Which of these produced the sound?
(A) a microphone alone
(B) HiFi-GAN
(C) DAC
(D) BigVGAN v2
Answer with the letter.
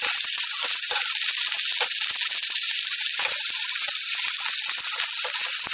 A